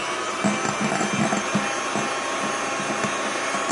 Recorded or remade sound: recorded